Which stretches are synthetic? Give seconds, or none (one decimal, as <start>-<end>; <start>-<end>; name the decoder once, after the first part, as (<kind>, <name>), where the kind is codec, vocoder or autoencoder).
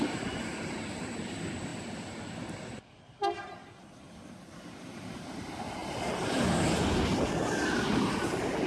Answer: 0.0-5.8 (vocoder, BigVGAN v2); 8.0-8.7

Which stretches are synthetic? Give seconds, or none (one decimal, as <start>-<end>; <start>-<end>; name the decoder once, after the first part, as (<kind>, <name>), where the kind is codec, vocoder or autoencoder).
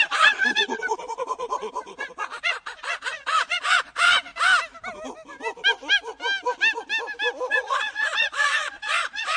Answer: 0.0-4.3 (vocoder, Vocos); 7.5-9.4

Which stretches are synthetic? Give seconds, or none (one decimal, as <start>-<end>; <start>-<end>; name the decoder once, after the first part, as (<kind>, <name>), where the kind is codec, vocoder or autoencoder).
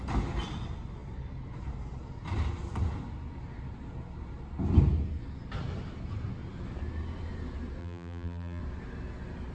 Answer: 7.8-8.6 (vocoder, BigVGAN v2)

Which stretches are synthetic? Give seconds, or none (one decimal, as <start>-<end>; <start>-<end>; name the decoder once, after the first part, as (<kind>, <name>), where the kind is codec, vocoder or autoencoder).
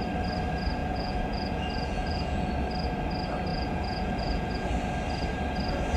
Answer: 0.8-2.5 (vocoder, Vocos); 3.5-4.7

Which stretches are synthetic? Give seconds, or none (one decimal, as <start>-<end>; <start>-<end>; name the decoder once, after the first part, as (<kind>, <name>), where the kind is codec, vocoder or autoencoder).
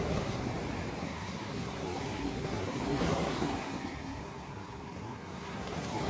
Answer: 0.0-0.5 (codec, SNAC); 1.0-6.1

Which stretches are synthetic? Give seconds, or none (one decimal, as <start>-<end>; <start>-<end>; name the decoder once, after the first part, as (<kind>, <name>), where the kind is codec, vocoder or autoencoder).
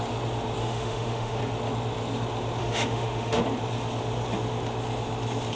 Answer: 0.6-1.4 (autoencoder, DAC-VAE); 2.6-3.4